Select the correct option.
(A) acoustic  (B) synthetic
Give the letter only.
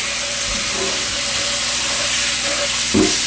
A